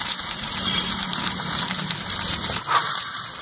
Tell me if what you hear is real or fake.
fake